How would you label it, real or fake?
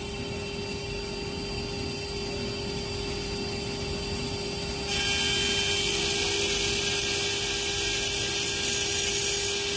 real